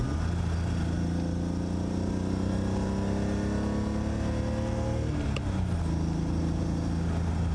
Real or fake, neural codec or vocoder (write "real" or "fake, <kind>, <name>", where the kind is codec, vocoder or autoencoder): real